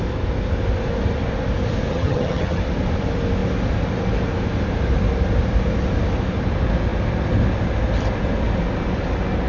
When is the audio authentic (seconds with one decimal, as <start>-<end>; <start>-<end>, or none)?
0.0-1.9; 2.6-9.5